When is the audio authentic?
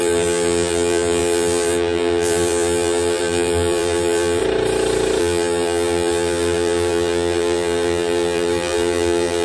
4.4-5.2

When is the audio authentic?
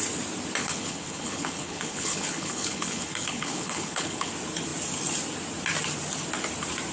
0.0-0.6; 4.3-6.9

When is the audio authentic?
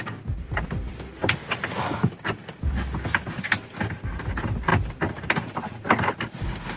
0.0-6.8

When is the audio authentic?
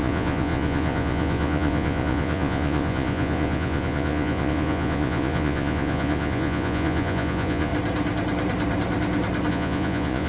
7.7-9.5